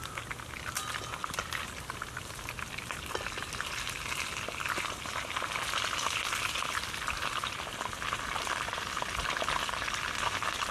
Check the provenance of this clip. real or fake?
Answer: real